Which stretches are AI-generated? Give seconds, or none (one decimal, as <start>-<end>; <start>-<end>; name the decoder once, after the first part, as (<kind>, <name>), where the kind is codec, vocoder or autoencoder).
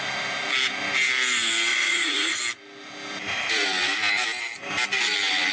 1.7-2.4 (vocoder, Vocos)